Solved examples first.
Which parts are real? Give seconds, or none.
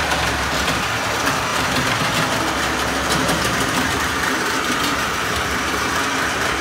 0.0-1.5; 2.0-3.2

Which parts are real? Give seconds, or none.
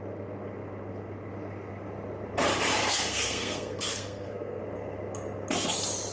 0.0-2.8; 4.6-6.1